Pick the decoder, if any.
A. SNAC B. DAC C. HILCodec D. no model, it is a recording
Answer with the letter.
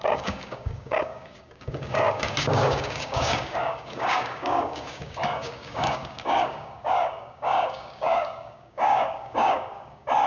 B